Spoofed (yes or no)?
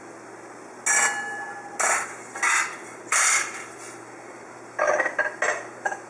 no